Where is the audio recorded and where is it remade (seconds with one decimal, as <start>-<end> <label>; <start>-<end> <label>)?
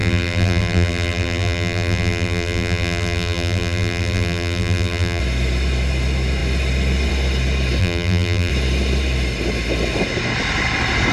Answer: 0.0-5.2 remade; 5.2-7.8 recorded; 7.8-8.5 remade; 8.5-11.1 recorded